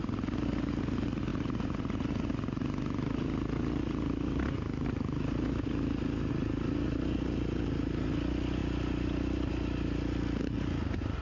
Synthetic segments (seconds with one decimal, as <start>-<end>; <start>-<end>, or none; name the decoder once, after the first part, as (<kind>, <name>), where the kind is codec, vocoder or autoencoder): none